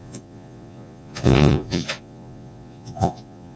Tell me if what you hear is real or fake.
fake